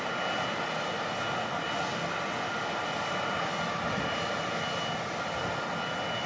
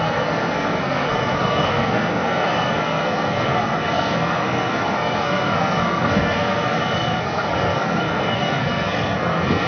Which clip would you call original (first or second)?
first